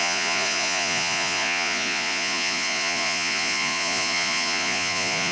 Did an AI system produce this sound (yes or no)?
yes